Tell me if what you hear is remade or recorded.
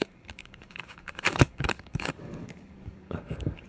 remade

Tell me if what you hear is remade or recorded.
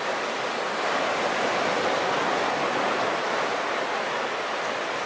recorded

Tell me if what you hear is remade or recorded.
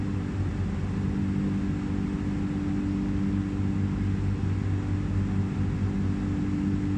recorded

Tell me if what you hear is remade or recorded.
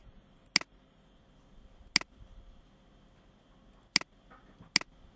recorded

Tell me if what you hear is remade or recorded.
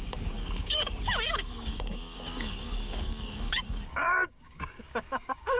remade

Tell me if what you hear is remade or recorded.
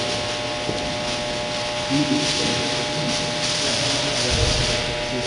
recorded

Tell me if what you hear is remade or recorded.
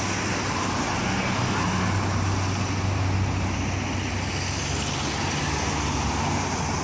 recorded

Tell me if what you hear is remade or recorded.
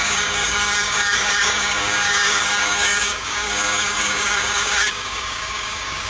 remade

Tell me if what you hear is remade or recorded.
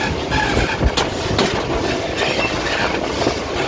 recorded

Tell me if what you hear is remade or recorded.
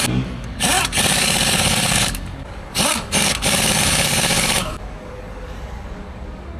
remade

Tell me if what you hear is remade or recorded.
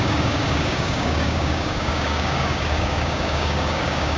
remade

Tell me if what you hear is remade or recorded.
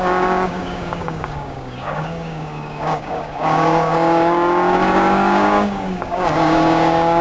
remade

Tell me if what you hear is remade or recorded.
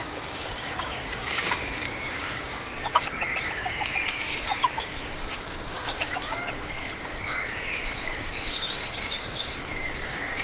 remade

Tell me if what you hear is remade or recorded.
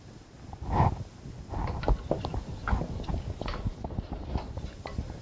recorded